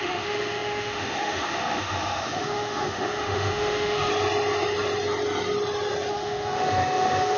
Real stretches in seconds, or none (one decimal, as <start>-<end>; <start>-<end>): 4.1-6.1